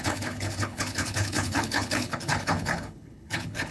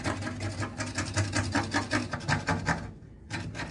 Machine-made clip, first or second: first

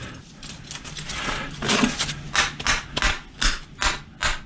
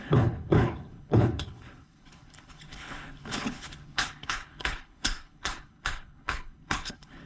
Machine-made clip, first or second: second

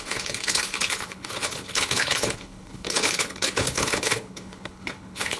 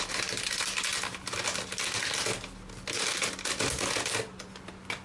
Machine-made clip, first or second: first